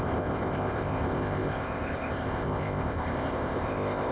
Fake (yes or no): yes